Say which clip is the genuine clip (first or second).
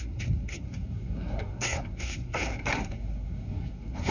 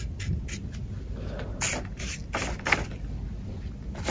second